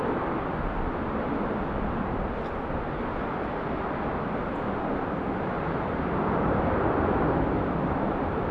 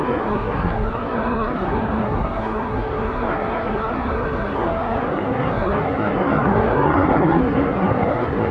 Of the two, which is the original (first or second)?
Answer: first